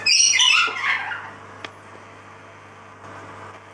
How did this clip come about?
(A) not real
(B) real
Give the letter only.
B